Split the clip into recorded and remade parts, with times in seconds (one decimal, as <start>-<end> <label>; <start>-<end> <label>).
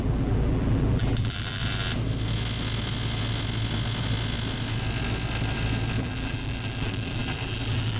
0.0-1.6 remade; 1.6-6.0 recorded; 6.0-8.0 remade